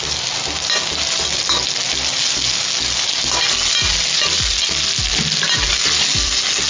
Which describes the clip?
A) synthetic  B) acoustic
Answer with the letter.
B